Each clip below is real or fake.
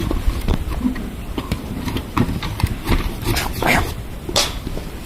fake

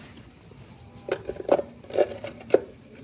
fake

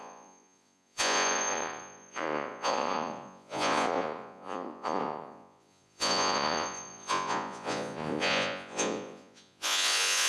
fake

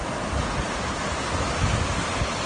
real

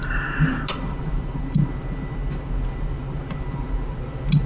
real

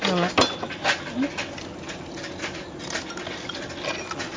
real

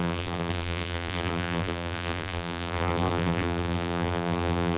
fake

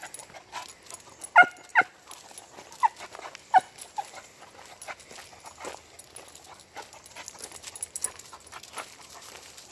real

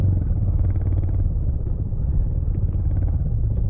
real